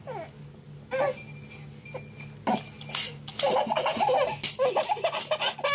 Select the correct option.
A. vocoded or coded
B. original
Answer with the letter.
B